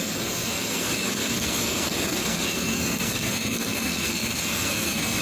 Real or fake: fake